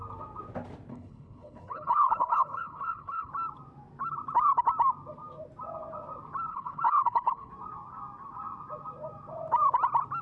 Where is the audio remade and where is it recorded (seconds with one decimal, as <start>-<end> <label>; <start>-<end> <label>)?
0.0-0.9 recorded; 0.9-3.3 remade; 3.3-6.5 recorded; 6.5-7.5 remade; 7.5-10.2 recorded